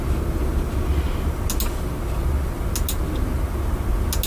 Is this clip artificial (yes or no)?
no